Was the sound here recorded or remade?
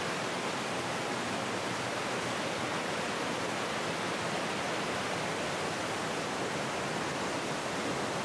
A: recorded